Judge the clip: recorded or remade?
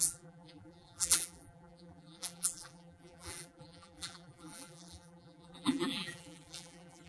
remade